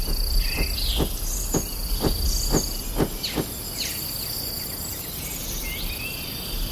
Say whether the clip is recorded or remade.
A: recorded